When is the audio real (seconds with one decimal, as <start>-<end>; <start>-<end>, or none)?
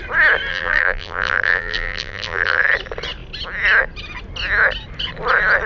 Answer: 0.0-0.5; 2.6-5.7